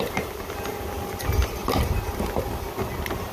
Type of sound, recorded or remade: recorded